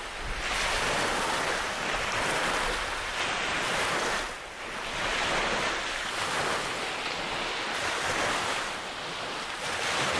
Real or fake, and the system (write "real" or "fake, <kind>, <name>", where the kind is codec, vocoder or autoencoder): real